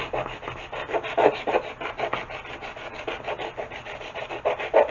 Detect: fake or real real